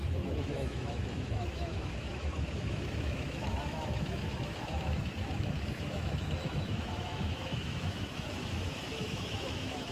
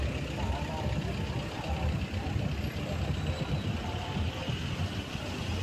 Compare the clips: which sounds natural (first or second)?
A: second